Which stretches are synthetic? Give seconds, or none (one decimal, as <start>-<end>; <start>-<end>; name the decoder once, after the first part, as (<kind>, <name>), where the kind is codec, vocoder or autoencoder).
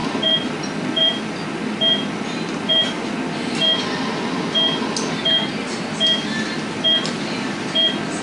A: 0.0-8.2 (vocoder, BigVGAN v2)